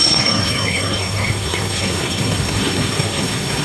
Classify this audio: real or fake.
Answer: fake